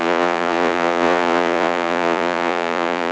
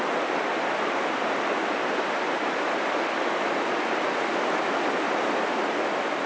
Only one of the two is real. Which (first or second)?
second